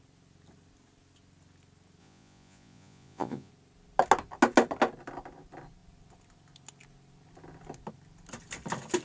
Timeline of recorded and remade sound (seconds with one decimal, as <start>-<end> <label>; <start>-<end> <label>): 0.0-2.0 recorded; 2.0-3.5 remade; 3.5-9.0 recorded

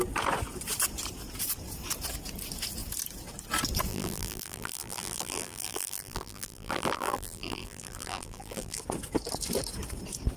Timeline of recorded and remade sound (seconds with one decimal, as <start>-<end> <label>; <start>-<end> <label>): 0.0-3.9 recorded; 3.9-8.8 remade; 8.8-10.4 recorded

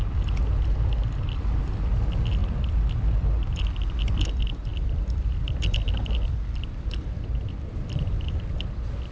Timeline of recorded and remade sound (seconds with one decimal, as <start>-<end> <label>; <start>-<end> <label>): 0.0-2.4 recorded; 2.4-2.9 remade; 2.9-4.7 recorded; 4.7-8.3 remade; 8.3-9.1 recorded

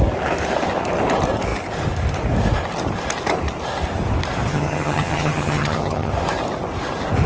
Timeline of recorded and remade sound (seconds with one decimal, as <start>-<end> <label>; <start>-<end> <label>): 0.0-4.5 recorded; 4.5-6.1 remade; 6.1-7.3 recorded